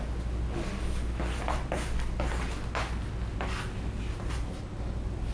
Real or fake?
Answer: real